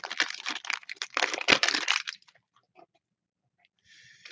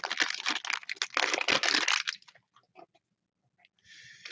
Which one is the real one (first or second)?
second